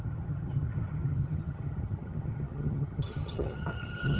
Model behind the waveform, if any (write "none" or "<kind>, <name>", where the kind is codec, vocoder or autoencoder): vocoder, HiFi-GAN